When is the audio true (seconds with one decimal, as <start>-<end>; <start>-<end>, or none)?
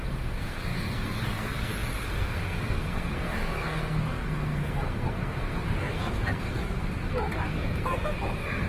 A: none